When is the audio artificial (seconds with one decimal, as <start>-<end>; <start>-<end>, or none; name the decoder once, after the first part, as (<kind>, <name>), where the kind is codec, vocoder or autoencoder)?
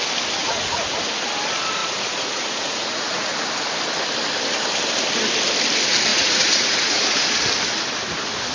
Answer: 0.4-1.3 (vocoder, Vocos); 1.8-3.3; 6.1-7.3